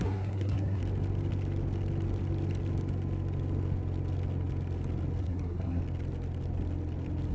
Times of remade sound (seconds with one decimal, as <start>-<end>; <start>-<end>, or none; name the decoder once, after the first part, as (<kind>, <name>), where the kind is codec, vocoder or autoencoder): 0.0-0.8 (codec, SNAC); 5.2-5.8